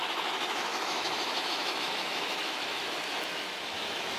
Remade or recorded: remade